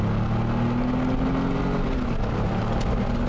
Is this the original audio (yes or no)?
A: yes